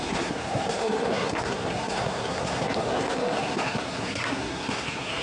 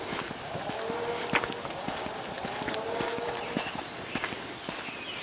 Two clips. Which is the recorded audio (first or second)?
second